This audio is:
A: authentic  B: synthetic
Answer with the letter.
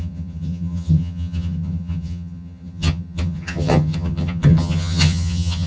B